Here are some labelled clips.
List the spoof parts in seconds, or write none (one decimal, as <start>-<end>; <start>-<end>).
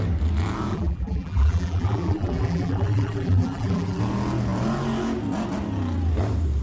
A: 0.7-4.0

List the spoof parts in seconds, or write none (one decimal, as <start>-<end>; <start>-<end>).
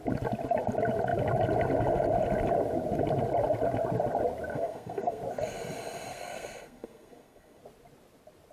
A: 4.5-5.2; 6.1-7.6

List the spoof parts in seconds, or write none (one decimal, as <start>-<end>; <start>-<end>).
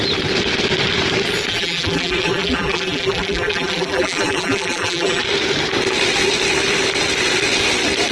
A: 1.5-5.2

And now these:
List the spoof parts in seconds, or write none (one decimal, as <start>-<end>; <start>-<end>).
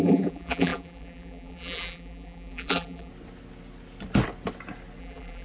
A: 0.0-3.1; 5.0-5.4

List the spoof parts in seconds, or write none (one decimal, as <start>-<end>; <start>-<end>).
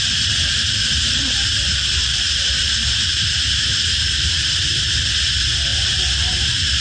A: 0.8-4.8; 5.7-6.8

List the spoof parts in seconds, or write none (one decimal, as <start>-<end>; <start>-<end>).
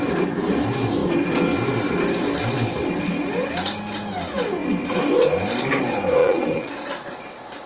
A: 6.2-6.7